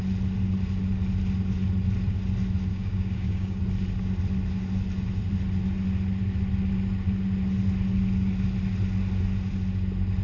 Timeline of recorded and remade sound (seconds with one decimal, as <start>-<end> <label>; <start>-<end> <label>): 0.0-2.7 recorded; 2.7-3.6 remade; 3.6-10.2 recorded